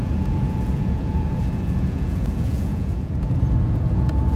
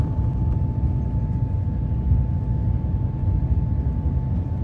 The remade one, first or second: first